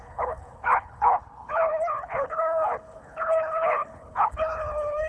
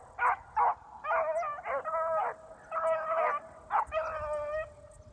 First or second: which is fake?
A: first